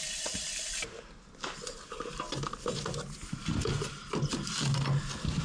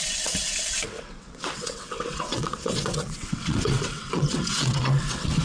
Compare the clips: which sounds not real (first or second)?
second